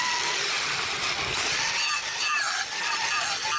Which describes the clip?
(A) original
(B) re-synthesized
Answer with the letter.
A